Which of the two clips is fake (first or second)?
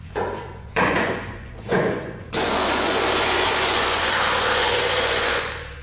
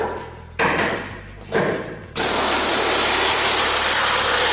first